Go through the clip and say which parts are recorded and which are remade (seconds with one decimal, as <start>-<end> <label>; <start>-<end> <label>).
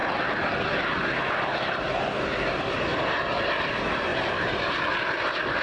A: 0.0-4.1 recorded; 4.1-4.7 remade; 4.7-5.6 recorded